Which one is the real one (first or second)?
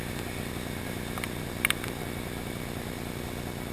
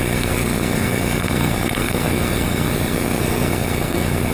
first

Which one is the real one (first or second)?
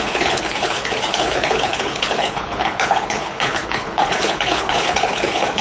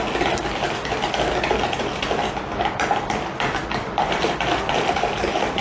second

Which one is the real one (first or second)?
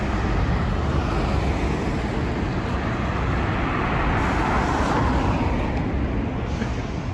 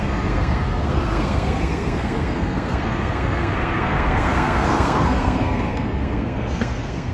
first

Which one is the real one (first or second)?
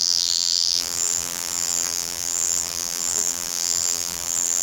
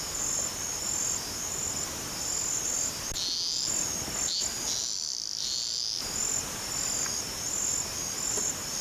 second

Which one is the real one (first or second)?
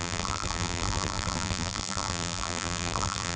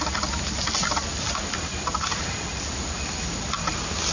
second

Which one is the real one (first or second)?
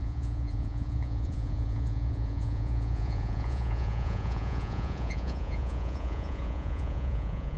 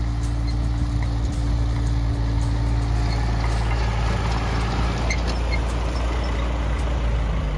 second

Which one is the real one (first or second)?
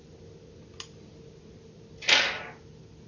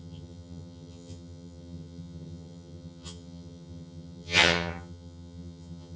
first